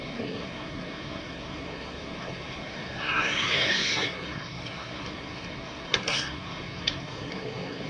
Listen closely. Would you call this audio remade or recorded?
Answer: remade